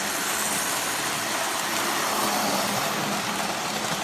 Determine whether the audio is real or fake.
real